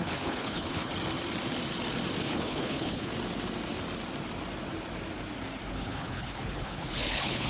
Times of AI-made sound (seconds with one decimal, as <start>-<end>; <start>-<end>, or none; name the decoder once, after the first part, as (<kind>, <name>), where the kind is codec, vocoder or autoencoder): 0.0-0.9 (codec, HILCodec); 2.2-3.1; 5.7-7.5